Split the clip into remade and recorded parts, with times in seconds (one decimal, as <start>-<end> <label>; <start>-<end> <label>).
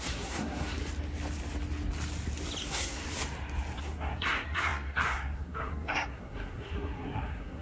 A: 0.0-0.8 remade; 0.8-2.6 recorded; 2.6-3.0 remade; 3.0-3.8 recorded; 3.8-7.6 remade